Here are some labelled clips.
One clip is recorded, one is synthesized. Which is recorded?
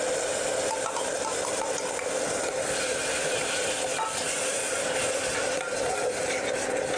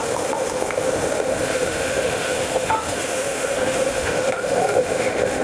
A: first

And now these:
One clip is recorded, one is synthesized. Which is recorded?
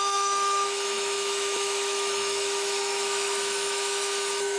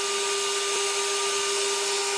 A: second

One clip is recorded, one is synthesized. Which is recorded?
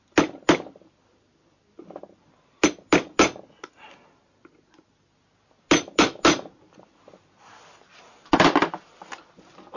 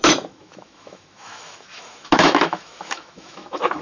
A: first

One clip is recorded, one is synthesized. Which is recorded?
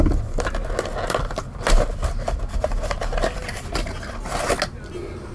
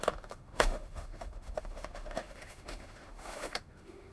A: first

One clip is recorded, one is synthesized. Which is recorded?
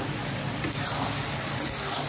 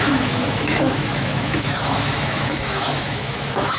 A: first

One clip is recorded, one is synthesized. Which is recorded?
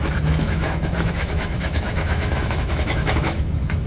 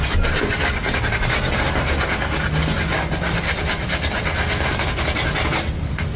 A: second